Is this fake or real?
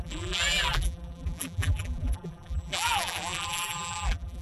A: fake